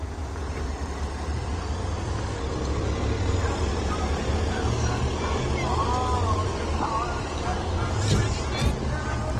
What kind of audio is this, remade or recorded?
recorded